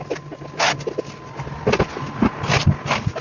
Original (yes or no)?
yes